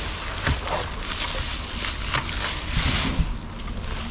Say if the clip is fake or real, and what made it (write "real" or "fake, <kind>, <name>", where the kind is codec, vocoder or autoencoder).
real